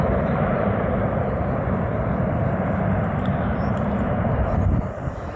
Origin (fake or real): fake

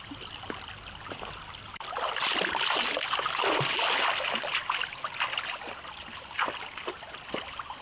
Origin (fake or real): real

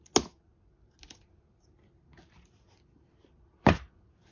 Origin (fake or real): real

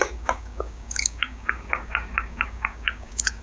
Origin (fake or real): fake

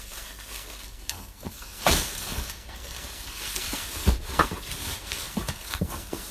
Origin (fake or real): fake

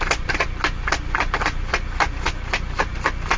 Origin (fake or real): real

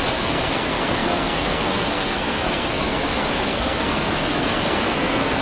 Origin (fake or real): fake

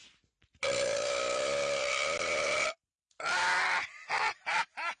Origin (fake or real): real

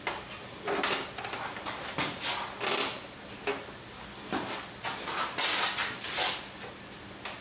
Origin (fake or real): real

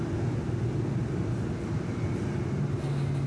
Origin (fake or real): real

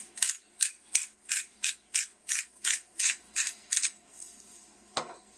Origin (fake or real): fake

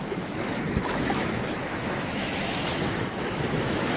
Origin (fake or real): fake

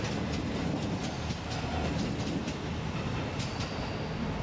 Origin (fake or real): real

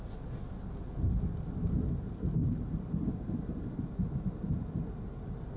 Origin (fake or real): real